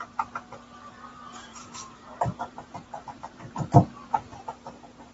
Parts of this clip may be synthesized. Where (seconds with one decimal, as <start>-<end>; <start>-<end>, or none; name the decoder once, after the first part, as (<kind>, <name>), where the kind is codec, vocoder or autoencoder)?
1.1-3.7 (vocoder, BigVGAN v2)